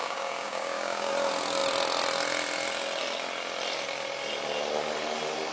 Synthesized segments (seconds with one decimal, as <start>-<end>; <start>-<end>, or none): 0.0-1.1

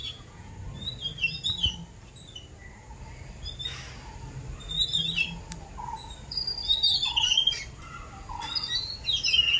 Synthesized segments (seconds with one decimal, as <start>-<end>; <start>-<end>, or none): 0.0-0.5